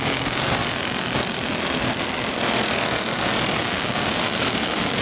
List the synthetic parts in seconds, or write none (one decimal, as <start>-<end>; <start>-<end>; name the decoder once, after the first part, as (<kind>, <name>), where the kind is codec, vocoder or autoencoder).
0.0-0.6 (codec, DAC); 3.6-5.0